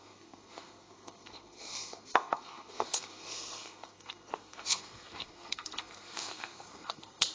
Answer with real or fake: fake